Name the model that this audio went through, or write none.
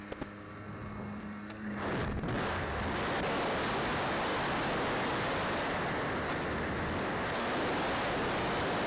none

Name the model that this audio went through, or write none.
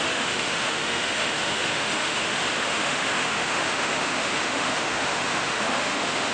autoencoder, DAC-VAE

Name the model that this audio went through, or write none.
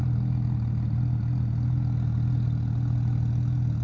none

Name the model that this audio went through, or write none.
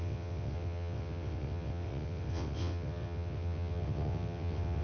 vocoder, WaveNeXt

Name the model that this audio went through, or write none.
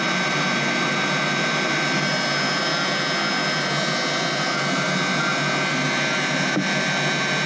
none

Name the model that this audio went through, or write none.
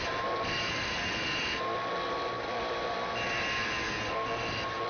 none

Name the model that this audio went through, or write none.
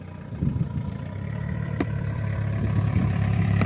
vocoder, BigVGAN v2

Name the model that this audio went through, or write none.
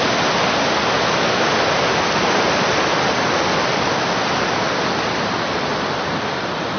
none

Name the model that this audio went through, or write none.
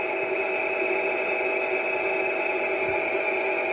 none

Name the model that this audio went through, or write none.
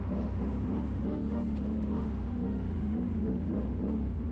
autoencoder, DAC-VAE